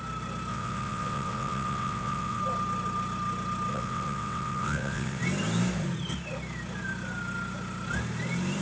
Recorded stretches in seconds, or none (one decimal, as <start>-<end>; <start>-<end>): 0.0-0.5; 2.4-3.7; 5.2-8.6